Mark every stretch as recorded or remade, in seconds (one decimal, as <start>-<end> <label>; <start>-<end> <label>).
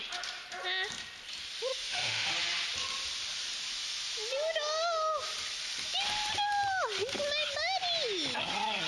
0.0-1.7 recorded; 1.7-2.3 remade; 2.3-8.9 recorded